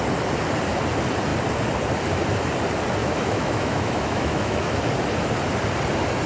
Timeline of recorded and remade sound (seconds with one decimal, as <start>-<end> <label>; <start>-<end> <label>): 0.0-3.0 recorded; 3.0-4.8 remade; 4.8-6.3 recorded